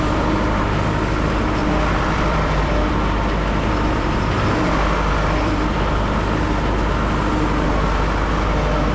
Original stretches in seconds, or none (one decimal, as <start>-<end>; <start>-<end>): 0.0-1.6; 5.8-8.9